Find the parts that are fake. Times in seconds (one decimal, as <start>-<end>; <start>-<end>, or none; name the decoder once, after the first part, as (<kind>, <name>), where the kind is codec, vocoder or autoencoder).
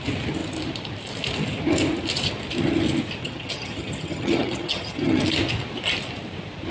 3.2-5.2 (vocoder, HiFi-GAN)